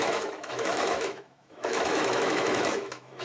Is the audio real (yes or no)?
no